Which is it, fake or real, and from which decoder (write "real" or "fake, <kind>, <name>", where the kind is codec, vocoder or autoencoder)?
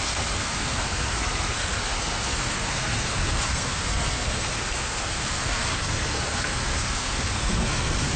fake, codec, SNAC